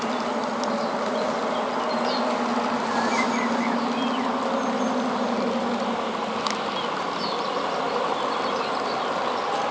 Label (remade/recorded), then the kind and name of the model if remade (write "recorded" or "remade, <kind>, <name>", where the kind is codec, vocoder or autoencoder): recorded